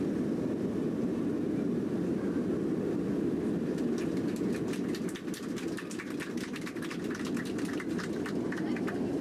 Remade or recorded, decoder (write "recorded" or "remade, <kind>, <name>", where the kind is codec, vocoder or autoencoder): recorded